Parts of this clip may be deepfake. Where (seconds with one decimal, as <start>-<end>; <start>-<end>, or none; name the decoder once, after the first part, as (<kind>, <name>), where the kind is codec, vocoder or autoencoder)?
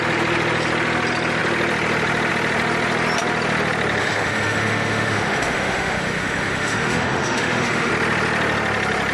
4.0-7.9 (autoencoder, DAC-VAE)